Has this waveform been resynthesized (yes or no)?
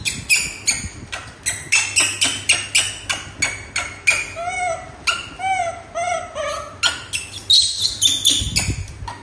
no